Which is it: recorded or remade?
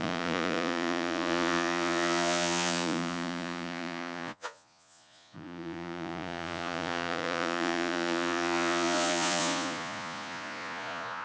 remade